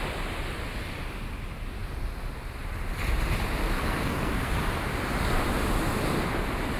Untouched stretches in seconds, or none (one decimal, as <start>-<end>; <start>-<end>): 0.0-3.8; 4.6-6.8